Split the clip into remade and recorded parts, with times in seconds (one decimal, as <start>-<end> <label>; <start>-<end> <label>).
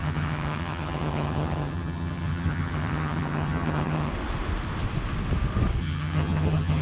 0.0-4.1 remade; 4.1-5.8 recorded; 5.8-6.8 remade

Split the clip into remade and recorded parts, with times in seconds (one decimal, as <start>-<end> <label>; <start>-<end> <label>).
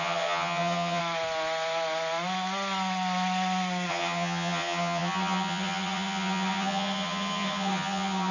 0.0-1.0 remade; 1.0-3.9 recorded; 3.9-8.3 remade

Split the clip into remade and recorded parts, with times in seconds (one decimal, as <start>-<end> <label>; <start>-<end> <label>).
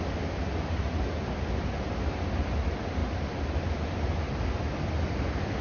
0.0-5.6 recorded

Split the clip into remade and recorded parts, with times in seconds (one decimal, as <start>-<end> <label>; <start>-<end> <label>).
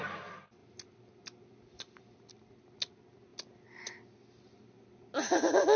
0.0-5.8 recorded